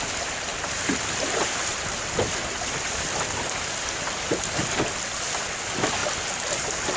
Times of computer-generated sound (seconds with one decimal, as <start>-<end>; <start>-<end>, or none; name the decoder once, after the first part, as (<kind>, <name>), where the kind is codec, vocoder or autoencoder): 0.5-4.0 (vocoder, BigVGAN v2)